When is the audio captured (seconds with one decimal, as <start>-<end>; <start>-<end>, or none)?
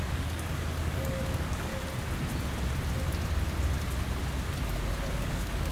1.7-5.1